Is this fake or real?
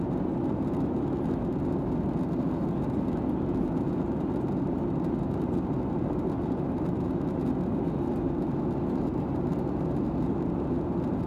real